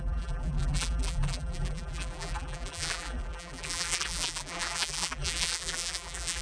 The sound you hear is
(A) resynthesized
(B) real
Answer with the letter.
A